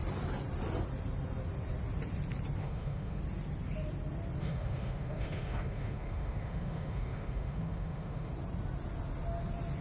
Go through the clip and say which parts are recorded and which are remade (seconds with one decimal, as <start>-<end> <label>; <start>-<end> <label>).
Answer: 0.0-2.6 recorded; 2.6-3.2 remade; 3.2-4.4 recorded; 4.4-8.3 remade; 8.3-9.8 recorded